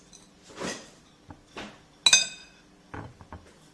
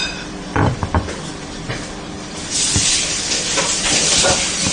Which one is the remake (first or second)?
second